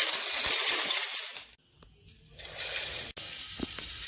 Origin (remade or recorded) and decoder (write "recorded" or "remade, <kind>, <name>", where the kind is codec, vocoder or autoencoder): recorded